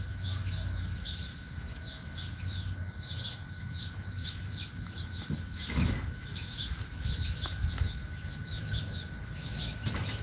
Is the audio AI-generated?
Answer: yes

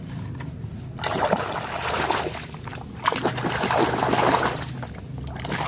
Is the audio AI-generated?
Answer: no